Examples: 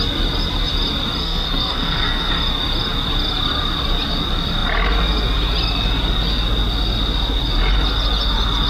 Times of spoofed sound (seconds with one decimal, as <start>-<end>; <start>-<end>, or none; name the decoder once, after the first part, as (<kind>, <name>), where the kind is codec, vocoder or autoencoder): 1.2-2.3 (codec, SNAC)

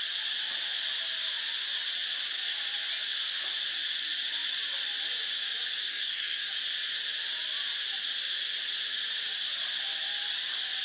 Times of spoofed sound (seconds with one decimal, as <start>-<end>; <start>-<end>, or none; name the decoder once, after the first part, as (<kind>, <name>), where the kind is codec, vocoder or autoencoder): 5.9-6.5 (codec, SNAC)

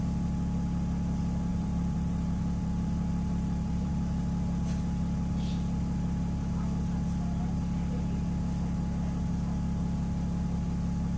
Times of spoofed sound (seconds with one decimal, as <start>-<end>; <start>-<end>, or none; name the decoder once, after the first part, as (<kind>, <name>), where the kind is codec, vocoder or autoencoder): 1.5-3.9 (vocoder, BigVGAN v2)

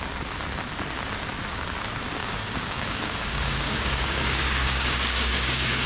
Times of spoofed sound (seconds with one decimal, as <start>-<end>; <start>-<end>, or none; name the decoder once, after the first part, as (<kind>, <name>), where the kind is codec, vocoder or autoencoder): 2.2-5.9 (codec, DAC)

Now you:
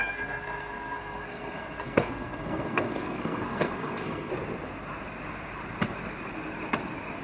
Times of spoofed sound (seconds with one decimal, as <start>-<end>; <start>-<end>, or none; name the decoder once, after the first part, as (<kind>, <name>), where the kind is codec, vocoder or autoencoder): 0.0-4.3 (codec, SNAC)